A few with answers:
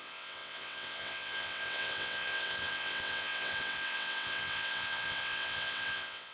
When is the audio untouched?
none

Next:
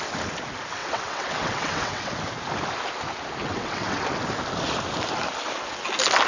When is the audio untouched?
0.0-0.8; 2.2-3.4; 4.0-6.3

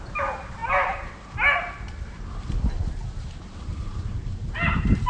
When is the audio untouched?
0.0-5.1

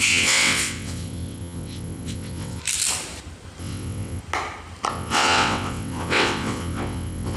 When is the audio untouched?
2.6-3.6; 4.2-4.9

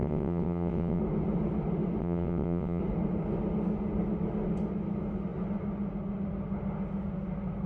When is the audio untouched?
1.0-2.0; 2.8-7.7

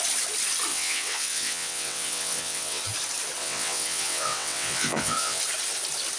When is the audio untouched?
0.0-0.7; 2.8-3.4; 5.4-6.2

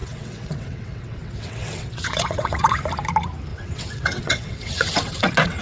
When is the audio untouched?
2.8-3.5